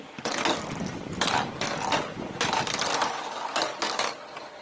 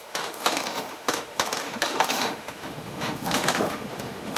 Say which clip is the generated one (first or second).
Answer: second